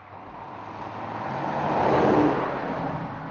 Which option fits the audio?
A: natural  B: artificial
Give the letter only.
A